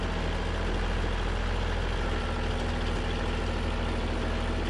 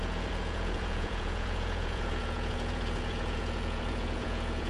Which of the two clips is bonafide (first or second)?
first